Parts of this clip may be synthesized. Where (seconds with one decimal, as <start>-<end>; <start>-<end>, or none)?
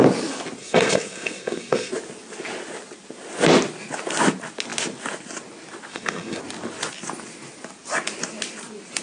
0.6-1.9; 5.9-6.4